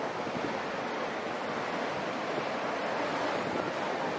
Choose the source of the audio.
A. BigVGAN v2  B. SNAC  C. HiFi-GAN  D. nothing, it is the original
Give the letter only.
D